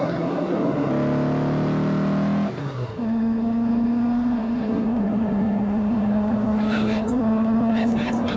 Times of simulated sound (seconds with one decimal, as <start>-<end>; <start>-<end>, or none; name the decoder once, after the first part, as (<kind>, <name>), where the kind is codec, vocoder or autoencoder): 0.0-0.9 (codec, SNAC); 2.6-8.4